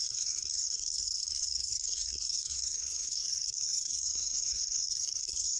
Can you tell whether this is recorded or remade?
remade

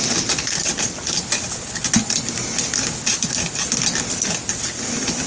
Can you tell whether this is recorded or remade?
recorded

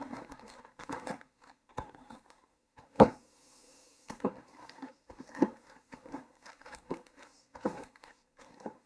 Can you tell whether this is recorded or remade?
remade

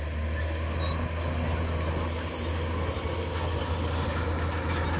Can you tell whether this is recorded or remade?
recorded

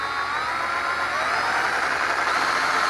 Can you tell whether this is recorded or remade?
recorded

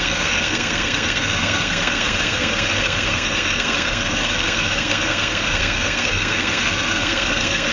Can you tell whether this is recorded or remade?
remade